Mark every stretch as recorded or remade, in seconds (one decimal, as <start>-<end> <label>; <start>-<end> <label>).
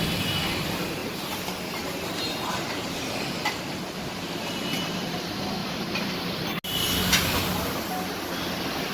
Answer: 0.0-1.0 recorded; 1.0-3.5 remade; 3.5-5.6 recorded; 5.6-6.2 remade; 6.2-8.9 recorded